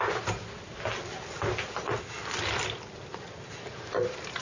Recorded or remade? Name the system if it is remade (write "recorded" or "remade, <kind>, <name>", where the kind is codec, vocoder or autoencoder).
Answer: recorded